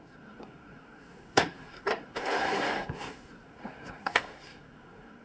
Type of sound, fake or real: fake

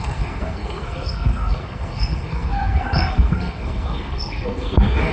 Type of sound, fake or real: fake